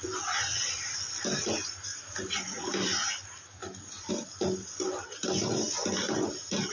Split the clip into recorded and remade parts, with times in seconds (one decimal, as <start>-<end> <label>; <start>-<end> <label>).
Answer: 0.0-1.9 recorded; 1.9-3.2 remade; 3.2-6.7 recorded